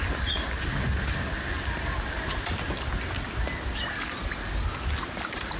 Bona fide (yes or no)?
yes